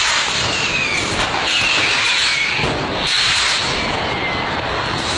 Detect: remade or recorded recorded